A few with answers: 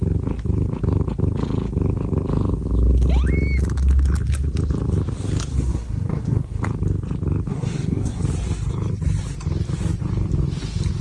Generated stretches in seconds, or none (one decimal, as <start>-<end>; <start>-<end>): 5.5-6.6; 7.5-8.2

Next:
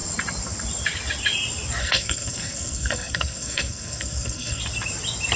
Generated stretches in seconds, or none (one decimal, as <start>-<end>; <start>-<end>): 1.8-4.6

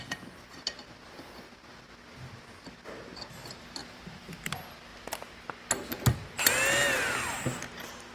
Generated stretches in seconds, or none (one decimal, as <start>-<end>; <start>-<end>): 3.8-4.5

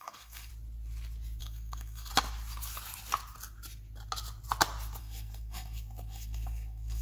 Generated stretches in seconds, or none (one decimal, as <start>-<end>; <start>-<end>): 0.0-0.5; 1.4-2.1; 5.0-7.0